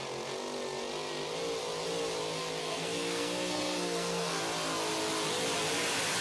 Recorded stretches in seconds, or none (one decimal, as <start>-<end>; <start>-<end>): 0.0-2.6; 4.4-6.2